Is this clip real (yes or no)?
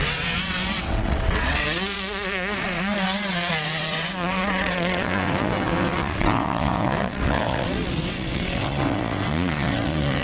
no